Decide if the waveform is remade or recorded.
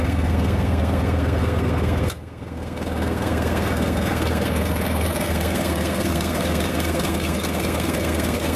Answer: remade